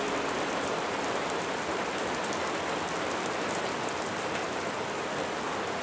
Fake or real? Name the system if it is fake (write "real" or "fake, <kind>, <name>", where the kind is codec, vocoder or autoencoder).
real